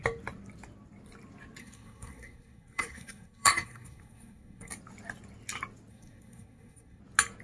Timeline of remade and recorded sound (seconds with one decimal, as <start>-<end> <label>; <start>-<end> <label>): 0.0-1.6 recorded; 1.6-4.7 remade; 4.7-5.9 recorded; 5.9-7.0 remade; 7.0-7.4 recorded